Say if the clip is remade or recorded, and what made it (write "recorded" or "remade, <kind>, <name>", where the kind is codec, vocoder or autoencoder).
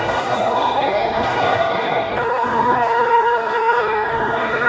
remade, codec, SNAC